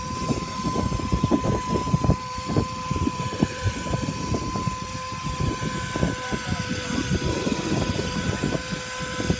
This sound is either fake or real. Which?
real